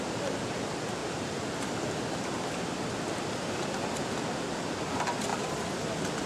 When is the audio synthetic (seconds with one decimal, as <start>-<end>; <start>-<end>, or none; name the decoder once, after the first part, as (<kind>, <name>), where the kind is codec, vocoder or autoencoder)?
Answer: none